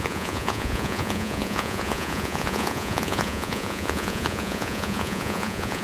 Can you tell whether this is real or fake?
fake